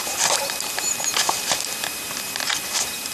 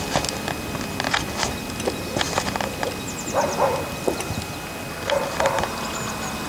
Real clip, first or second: second